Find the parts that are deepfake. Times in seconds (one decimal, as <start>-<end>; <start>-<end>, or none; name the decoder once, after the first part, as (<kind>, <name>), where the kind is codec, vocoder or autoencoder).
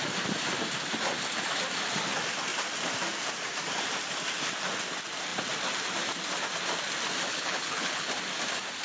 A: 7.3-8.1 (codec, HILCodec)